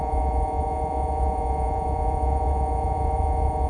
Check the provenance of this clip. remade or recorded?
remade